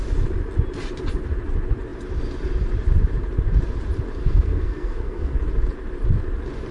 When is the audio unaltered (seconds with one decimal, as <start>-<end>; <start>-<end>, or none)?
0.0-4.2; 5.4-6.7